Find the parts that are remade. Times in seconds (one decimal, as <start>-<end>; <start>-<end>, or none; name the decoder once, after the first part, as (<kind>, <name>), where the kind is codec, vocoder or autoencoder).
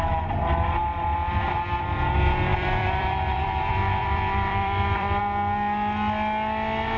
2.5-5.2 (vocoder, BigVGAN v2)